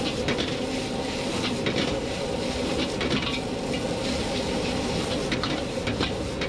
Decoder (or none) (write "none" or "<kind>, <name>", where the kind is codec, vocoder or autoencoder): none